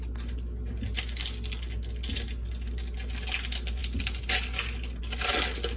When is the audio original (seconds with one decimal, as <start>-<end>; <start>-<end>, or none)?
0.0-5.8